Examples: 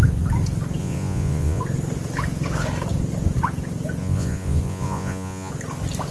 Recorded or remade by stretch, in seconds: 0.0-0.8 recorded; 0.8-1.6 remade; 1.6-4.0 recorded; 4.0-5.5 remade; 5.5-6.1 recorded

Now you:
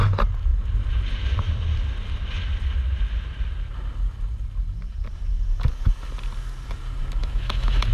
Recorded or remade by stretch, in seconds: 0.0-7.2 recorded; 7.2-7.9 remade

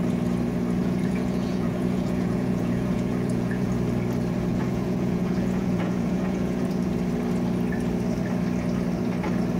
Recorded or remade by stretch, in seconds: 0.0-0.8 recorded; 0.8-3.7 remade; 3.7-4.5 recorded; 4.5-6.9 remade; 6.9-9.6 recorded

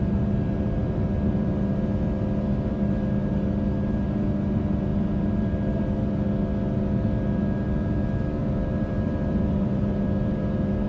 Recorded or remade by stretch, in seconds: 0.0-0.8 recorded; 0.8-1.7 remade; 1.7-4.9 recorded; 4.9-5.8 remade; 5.8-8.4 recorded; 8.4-9.8 remade; 9.8-10.9 recorded

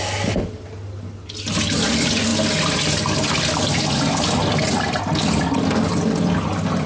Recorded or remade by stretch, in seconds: 0.0-6.9 recorded

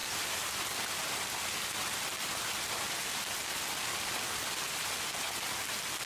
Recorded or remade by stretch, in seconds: 0.0-6.1 recorded